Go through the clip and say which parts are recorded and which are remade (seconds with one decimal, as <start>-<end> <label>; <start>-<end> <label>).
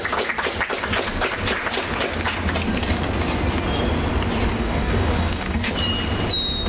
0.0-4.5 recorded; 4.5-5.7 remade; 5.7-6.7 recorded